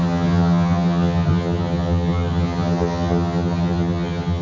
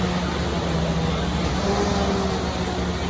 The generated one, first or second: first